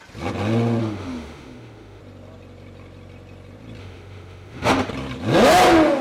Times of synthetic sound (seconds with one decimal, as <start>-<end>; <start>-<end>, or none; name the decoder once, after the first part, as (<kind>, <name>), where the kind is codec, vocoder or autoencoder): 0.8-2.0 (autoencoder, DAC-VAE); 3.8-4.9